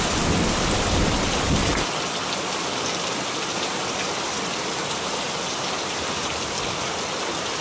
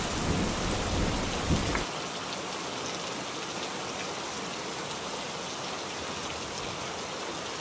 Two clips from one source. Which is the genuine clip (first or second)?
second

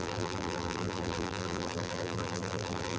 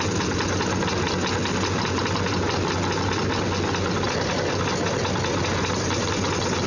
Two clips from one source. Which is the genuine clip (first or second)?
second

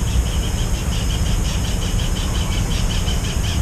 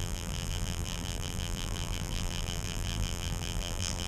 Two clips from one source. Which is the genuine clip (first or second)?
first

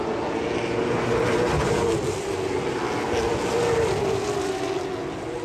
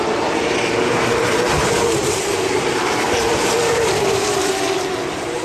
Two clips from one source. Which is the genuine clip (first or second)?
first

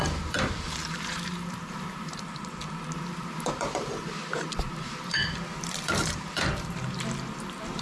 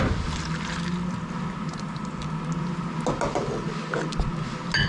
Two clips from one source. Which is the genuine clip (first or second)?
second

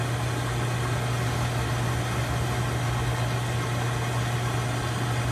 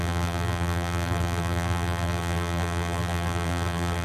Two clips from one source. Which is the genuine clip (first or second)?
first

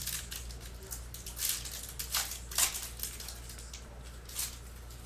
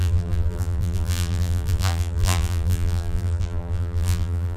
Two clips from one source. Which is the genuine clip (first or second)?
first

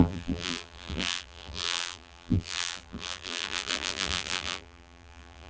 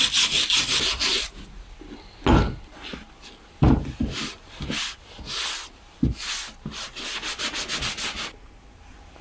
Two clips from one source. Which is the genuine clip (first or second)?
second